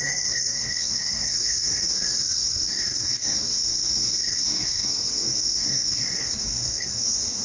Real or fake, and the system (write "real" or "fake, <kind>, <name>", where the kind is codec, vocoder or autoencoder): fake, codec, SNAC